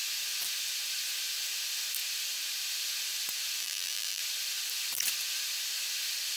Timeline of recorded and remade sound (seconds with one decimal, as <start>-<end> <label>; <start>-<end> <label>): 0.0-3.6 recorded; 3.6-4.2 remade; 4.2-6.4 recorded